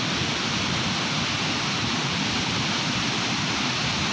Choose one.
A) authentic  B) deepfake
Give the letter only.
A